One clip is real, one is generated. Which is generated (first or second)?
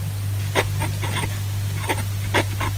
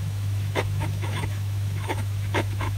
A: second